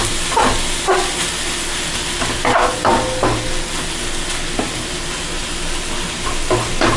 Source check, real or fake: real